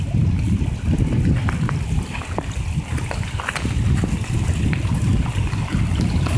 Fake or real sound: real